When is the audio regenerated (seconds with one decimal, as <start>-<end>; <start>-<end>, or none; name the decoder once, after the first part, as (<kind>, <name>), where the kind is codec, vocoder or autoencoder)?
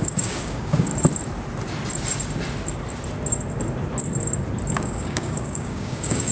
0.0-0.9 (codec, DAC); 4.7-6.3